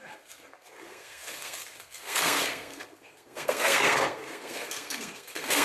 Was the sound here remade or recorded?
remade